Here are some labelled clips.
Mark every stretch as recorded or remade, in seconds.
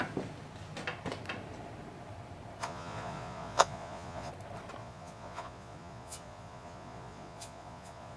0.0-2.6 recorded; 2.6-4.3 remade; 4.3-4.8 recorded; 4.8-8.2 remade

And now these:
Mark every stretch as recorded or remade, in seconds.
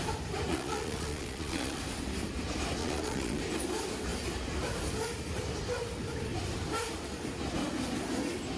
0.0-0.5 recorded; 0.5-1.8 remade; 1.8-2.8 recorded; 2.8-3.4 remade; 3.4-8.6 recorded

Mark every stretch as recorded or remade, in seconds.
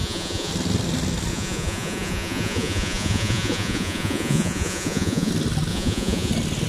0.0-0.5 remade; 0.5-1.3 recorded; 1.3-5.3 remade; 5.3-5.7 recorded; 5.7-6.3 remade; 6.3-6.7 recorded